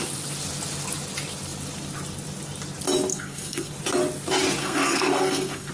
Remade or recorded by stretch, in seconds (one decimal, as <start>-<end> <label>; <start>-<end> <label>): 0.0-3.1 recorded; 3.1-3.7 remade; 3.7-4.6 recorded; 4.6-5.7 remade